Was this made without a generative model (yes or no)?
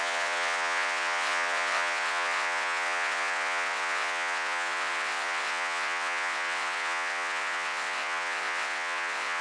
no